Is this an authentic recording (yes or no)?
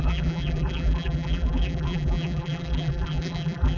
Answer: no